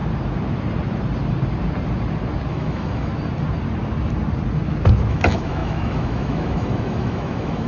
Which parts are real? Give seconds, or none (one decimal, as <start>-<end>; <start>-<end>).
0.0-2.5; 3.1-5.1